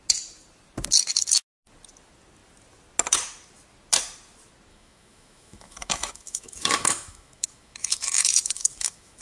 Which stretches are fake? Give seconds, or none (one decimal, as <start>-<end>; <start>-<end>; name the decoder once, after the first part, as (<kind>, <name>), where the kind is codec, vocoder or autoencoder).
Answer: 4.7-9.2 (autoencoder, DAC-VAE)